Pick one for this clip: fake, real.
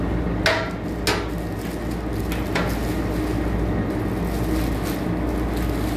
real